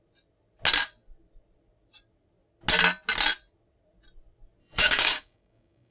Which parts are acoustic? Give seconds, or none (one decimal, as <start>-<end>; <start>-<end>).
0.0-4.6